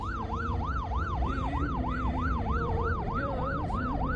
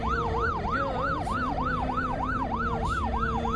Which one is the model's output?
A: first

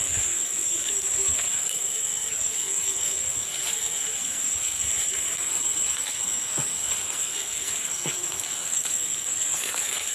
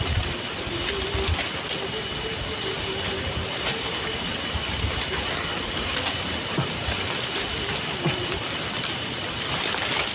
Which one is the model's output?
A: first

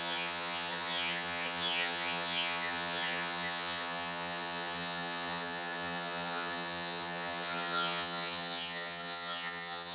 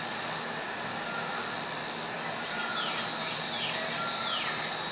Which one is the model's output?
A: first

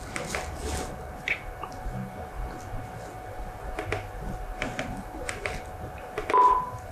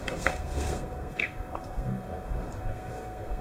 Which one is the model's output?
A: second